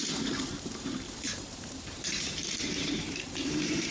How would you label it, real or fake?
fake